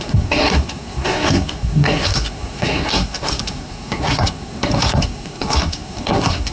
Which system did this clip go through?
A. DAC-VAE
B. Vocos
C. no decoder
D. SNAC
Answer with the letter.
D